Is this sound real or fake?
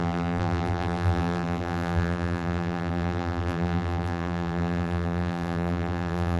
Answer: fake